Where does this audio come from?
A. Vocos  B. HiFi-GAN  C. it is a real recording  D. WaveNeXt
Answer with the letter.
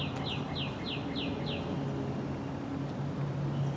C